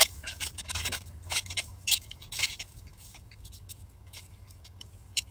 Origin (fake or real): fake